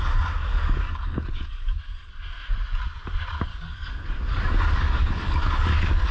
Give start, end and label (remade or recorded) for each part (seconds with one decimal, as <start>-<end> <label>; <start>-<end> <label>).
0.0-0.5 recorded; 0.5-2.1 remade; 2.1-3.5 recorded; 3.5-6.1 remade